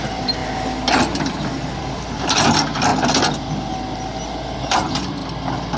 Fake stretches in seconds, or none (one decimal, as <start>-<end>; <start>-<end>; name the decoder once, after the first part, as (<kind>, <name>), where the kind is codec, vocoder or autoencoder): 0.0-0.4 (vocoder, BigVGAN v2); 1.0-2.9; 4.6-5.2